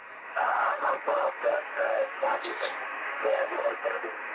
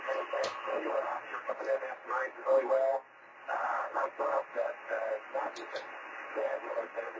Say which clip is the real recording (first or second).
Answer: second